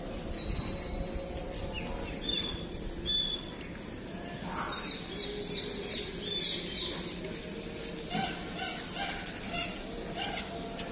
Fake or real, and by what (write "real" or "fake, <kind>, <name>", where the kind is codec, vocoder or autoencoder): real